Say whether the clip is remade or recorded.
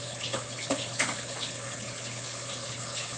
remade